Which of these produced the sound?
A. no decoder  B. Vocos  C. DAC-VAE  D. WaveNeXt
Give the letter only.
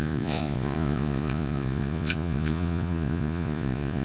B